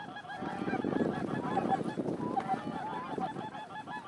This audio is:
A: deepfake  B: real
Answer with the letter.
B